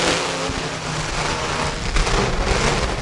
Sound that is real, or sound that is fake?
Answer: real